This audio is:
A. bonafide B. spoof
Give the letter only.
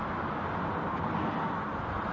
A